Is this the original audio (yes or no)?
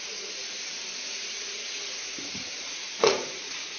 no